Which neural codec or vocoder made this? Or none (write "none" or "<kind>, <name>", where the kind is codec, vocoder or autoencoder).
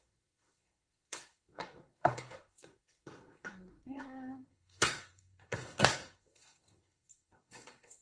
codec, SNAC